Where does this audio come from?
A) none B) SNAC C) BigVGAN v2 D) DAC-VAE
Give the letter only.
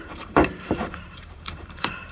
C